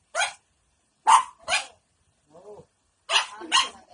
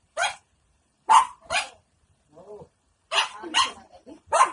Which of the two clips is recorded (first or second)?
first